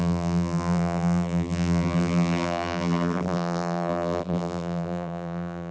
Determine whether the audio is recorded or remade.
remade